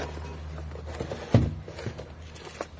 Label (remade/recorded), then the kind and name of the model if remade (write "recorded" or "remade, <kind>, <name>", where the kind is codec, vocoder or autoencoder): recorded